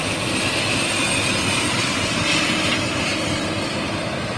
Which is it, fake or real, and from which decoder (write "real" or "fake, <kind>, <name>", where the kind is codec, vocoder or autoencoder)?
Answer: real